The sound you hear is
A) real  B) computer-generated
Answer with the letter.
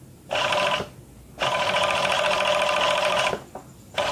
A